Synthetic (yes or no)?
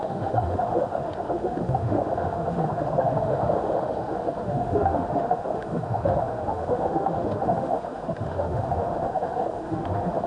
yes